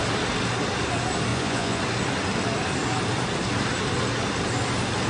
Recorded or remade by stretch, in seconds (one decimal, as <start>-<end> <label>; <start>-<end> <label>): 0.0-1.3 recorded; 1.3-1.8 remade; 1.8-5.1 recorded